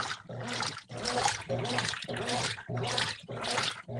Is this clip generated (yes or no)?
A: no